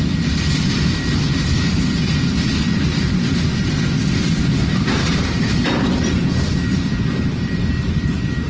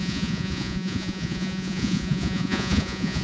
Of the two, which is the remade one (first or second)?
second